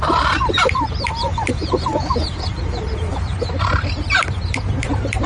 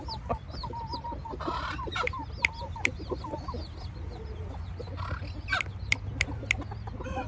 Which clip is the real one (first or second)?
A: second